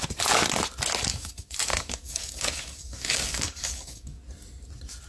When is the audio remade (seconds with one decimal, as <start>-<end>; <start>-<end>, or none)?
1.1-4.2